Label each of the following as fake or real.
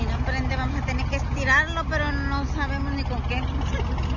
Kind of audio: real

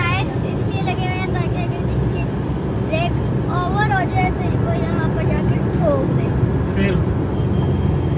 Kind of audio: real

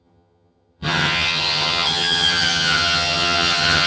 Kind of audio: fake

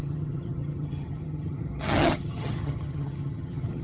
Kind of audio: fake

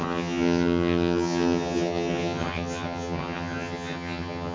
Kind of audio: fake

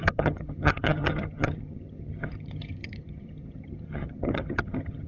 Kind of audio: fake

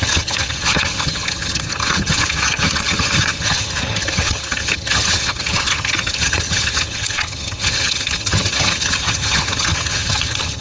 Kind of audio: fake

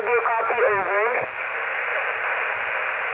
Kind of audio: real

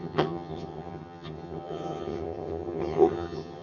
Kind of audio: fake